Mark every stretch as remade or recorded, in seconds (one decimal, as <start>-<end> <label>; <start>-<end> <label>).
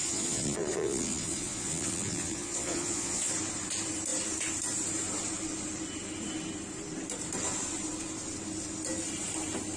0.0-3.3 remade; 3.3-9.8 recorded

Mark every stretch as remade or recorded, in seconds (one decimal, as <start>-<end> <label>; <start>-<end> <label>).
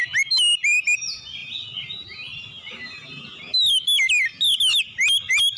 0.0-5.6 recorded